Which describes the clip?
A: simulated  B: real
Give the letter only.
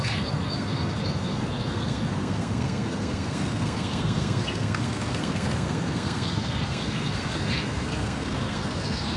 A